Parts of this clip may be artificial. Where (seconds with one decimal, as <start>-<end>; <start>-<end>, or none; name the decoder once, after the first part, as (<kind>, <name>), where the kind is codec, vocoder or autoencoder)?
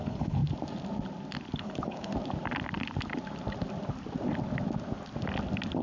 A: 0.0-0.4 (codec, HILCodec); 1.6-2.1